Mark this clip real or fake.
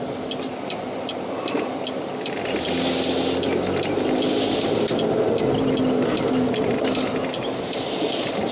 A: real